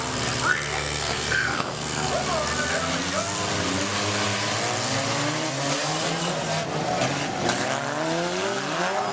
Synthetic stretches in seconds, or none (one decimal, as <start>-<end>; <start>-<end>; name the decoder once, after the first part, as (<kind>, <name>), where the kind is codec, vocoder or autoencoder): 0.5-2.1 (codec, SNAC)